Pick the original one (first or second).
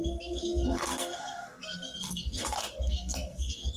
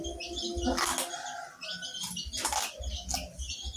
second